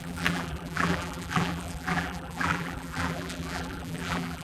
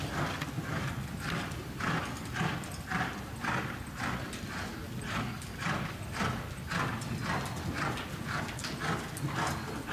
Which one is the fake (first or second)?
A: first